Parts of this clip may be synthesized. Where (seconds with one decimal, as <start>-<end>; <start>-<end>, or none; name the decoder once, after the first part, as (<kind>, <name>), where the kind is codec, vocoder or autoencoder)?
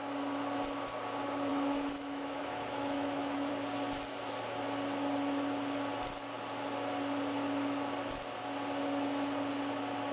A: 1.5-3.5 (autoencoder, DAC-VAE)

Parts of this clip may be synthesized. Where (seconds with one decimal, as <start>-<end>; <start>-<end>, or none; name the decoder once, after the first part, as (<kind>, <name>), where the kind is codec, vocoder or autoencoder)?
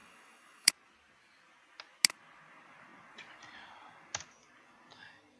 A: 0.0-0.7 (autoencoder, DAC-VAE)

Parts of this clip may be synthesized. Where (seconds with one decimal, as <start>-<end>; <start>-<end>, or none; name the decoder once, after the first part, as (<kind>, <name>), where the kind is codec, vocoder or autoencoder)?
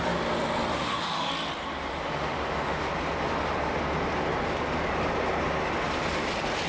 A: 0.7-1.3 (autoencoder, DAC-VAE); 1.9-2.9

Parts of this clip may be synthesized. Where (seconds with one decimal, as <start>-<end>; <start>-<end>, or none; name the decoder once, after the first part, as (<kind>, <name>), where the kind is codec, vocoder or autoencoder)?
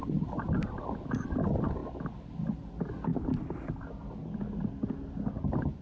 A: none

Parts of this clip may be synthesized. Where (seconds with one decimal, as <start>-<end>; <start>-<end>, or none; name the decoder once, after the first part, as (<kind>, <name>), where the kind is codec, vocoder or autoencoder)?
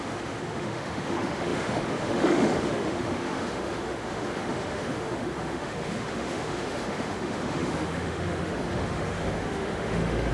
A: 0.0-10.3 (autoencoder, DAC-VAE)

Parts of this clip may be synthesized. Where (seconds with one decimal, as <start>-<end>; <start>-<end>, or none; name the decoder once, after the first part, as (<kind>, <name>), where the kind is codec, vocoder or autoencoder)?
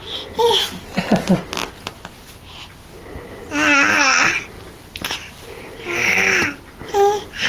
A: none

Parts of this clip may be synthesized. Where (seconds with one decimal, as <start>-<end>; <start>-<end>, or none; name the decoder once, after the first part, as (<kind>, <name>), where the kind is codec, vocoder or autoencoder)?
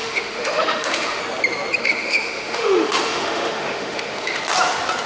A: 0.0-1.2 (autoencoder, DAC-VAE); 1.8-4.4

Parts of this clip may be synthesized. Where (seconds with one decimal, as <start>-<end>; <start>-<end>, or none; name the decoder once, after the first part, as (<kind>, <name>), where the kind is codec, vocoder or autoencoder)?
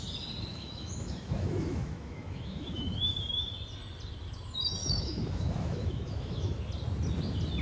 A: 0.5-3.5 (autoencoder, DAC-VAE); 4.8-6.6